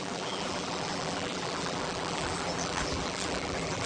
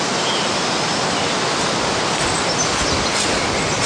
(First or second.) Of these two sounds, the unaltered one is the second